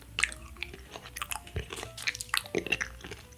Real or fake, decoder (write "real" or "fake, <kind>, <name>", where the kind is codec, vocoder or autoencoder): real